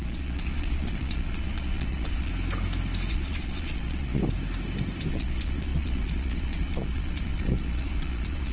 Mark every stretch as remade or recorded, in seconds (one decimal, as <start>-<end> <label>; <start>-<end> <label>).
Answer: 0.0-2.3 remade; 2.3-3.1 recorded; 3.1-4.2 remade; 4.2-5.1 recorded; 5.1-8.5 remade